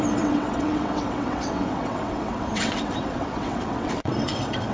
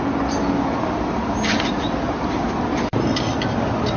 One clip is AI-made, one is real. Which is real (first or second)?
second